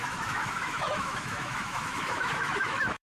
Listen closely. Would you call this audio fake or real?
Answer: fake